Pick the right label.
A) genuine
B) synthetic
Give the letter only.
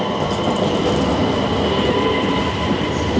A